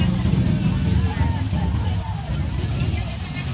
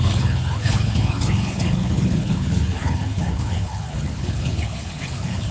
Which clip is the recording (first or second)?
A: first